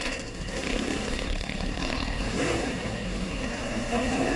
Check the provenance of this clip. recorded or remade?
remade